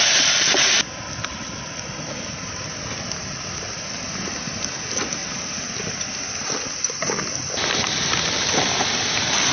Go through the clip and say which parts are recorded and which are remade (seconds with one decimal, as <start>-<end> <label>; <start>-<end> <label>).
0.0-5.2 recorded; 5.2-6.7 remade; 6.7-9.5 recorded